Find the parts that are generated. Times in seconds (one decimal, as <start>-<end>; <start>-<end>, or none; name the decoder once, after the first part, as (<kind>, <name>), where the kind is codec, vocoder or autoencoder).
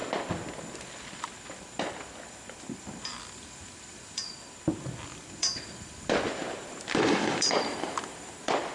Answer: 0.6-8.7 (vocoder, BigVGAN v2)